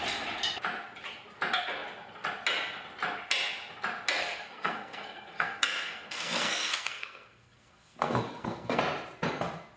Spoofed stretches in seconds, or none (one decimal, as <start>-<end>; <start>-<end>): 4.2-8.8